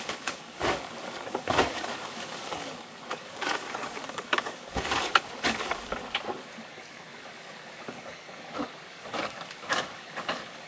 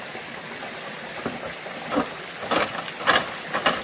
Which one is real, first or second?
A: second